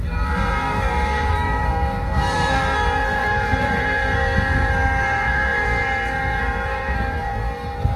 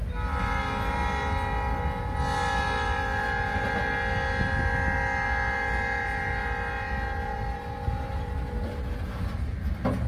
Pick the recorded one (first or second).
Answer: second